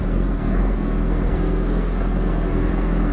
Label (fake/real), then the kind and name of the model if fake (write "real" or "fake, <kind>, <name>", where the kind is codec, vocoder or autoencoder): fake, codec, SNAC